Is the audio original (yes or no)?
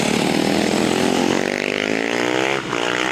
yes